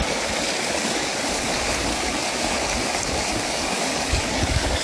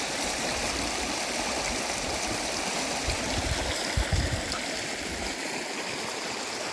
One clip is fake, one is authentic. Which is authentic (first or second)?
second